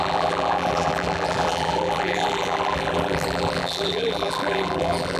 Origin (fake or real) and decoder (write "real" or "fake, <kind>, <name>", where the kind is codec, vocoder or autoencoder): fake, vocoder, BigVGAN v2